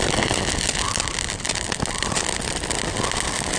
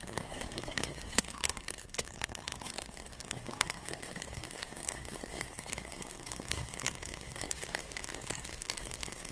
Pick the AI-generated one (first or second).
second